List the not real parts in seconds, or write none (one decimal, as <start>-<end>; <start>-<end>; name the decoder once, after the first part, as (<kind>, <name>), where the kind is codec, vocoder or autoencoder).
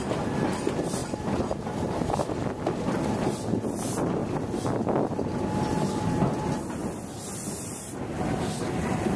1.0-2.9 (vocoder, BigVGAN v2); 4.2-5.1; 6.8-7.8